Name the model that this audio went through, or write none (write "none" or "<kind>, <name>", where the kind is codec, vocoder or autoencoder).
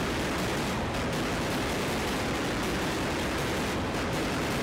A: none